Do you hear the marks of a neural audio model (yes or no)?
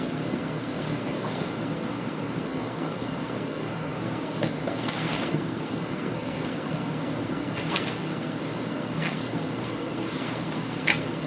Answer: yes